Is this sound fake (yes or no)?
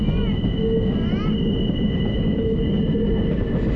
no